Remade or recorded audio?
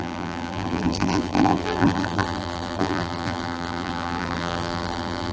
remade